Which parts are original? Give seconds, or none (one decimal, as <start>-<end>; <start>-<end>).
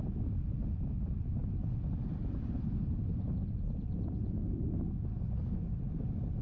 0.0-6.4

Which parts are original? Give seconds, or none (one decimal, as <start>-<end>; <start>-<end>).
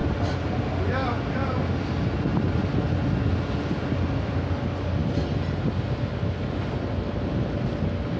0.0-8.2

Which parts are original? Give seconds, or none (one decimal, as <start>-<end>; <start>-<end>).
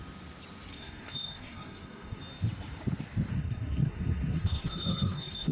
0.0-0.7; 2.2-3.3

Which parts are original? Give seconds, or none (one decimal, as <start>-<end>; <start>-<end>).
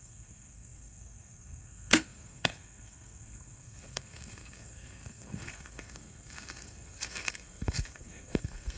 none